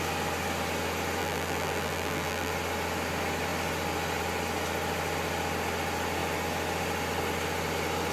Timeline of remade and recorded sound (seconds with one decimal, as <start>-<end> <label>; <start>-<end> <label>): 0.0-1.2 recorded; 1.2-2.5 remade; 2.5-8.1 recorded